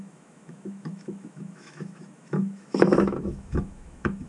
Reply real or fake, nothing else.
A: fake